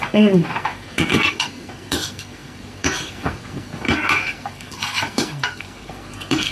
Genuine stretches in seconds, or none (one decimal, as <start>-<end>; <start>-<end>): none